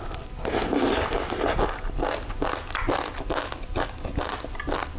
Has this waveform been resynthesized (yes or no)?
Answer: no